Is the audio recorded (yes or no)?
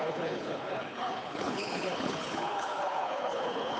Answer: no